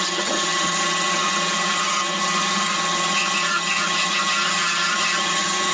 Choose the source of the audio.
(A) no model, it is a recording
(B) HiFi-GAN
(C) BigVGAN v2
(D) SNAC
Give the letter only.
B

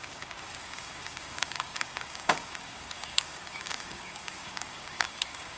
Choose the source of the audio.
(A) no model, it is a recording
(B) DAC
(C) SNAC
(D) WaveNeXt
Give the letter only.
B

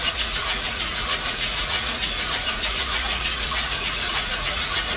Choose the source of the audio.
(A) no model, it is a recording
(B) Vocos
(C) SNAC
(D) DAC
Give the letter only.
B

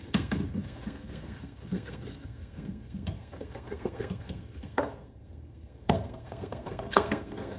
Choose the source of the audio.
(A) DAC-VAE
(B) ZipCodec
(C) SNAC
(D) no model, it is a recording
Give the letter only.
C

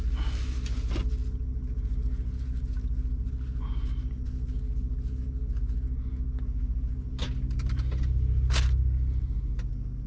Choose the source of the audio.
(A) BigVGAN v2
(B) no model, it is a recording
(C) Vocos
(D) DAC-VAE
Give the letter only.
B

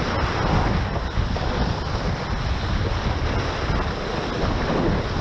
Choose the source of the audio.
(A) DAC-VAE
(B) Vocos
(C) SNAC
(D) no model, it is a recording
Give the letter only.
D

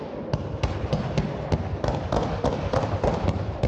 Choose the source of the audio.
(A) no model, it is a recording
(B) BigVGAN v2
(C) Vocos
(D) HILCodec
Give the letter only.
A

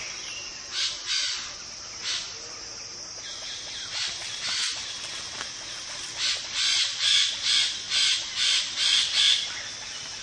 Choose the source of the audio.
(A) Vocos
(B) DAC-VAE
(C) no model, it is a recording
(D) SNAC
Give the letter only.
C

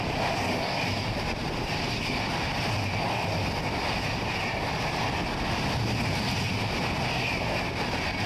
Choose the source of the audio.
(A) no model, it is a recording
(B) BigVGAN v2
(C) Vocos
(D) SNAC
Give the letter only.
A